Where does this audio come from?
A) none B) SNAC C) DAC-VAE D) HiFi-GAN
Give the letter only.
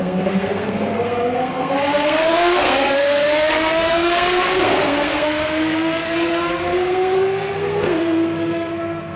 B